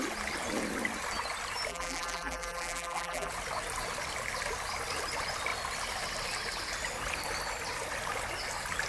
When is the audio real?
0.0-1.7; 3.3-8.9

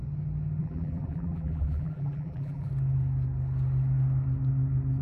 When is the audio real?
0.0-0.6; 2.7-5.0

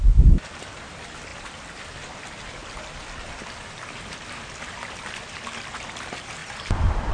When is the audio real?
0.0-1.3; 2.2-2.6; 5.9-6.4

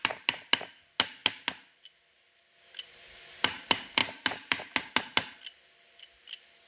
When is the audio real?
0.0-6.7

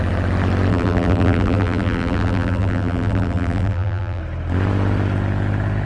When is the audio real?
0.0-0.7; 4.2-5.9

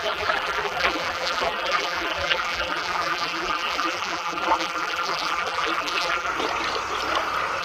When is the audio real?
6.3-7.6